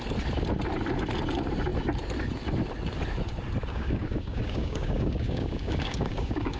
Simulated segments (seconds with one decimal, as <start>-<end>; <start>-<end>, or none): 3.7-6.6

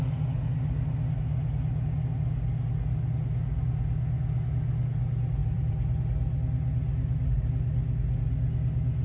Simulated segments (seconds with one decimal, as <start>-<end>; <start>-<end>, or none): 5.4-6.0

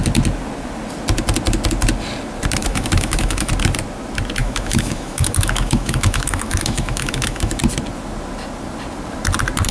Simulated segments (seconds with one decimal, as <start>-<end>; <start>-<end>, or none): 2.6-3.5; 4.4-7.6

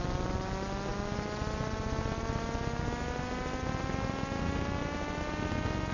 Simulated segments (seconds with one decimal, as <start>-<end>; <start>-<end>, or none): none

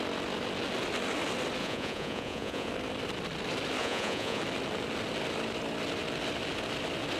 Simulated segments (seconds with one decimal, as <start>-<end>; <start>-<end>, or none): 1.6-2.7; 3.8-4.4

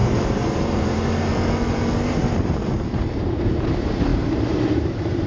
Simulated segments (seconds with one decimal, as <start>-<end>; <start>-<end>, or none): 0.0-1.3; 2.2-5.3